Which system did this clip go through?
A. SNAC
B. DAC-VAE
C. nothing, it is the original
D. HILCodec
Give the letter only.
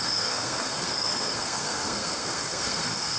A